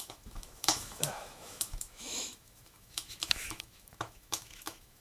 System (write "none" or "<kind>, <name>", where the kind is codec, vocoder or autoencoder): autoencoder, DAC-VAE